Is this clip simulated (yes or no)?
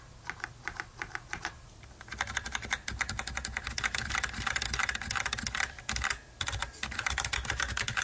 no